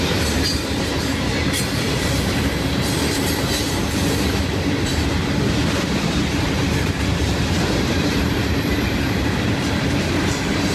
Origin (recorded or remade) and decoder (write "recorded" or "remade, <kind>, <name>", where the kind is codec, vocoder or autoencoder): remade, vocoder, BigVGAN v2